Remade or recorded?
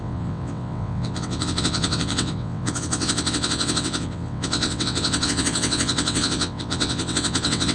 remade